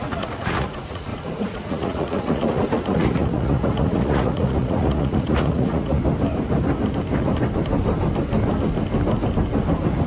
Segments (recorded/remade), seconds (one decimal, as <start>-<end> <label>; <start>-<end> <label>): 0.0-6.0 remade; 6.0-10.1 recorded